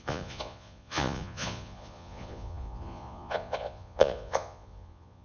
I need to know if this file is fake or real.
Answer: fake